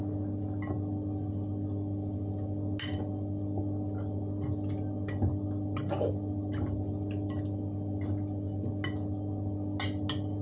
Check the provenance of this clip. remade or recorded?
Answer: recorded